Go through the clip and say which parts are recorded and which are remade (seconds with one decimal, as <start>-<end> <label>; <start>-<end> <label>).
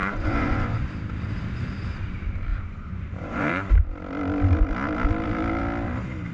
0.0-0.9 remade; 0.9-2.5 recorded; 2.5-3.7 remade; 3.7-6.3 recorded